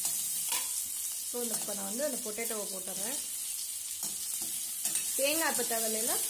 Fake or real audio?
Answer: real